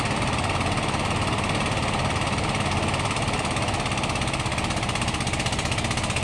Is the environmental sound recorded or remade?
recorded